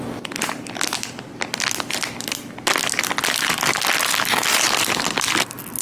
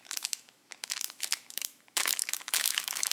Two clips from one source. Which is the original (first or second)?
first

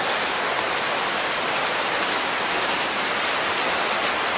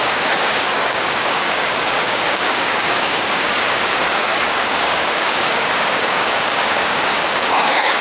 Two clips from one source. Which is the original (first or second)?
first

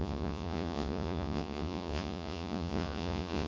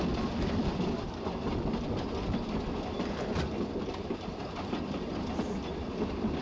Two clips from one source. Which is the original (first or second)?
second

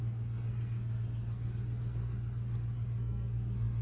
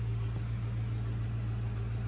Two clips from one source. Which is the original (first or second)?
second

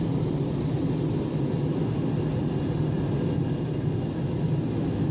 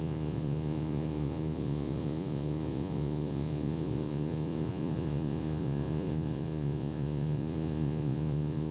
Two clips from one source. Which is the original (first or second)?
first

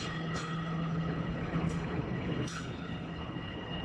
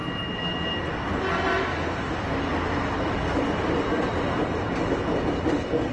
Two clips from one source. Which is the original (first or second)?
second